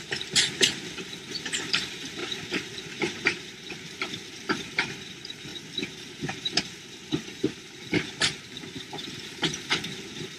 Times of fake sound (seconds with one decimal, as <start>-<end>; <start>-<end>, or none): 0.0-5.5; 6.1-10.4